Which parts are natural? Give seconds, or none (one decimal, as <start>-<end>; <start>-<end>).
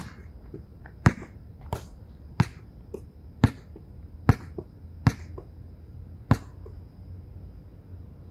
0.0-0.7; 2.1-8.3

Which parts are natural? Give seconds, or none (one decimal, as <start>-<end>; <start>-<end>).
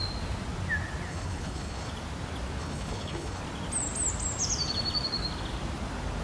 0.0-1.1; 1.9-2.6; 3.4-6.2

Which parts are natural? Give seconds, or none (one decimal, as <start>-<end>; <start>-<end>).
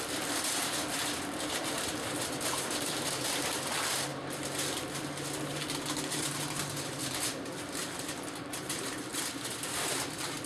0.0-10.5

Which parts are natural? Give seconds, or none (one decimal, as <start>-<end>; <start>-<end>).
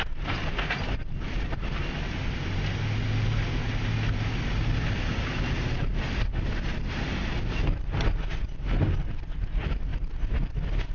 0.0-10.9